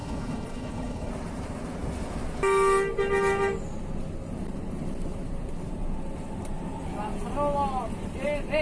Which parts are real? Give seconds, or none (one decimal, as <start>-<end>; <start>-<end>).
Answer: 1.1-8.6